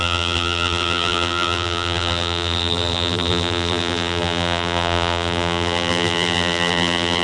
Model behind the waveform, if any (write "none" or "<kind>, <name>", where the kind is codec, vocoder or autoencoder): vocoder, BigVGAN v2